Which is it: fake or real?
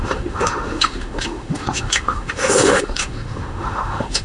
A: fake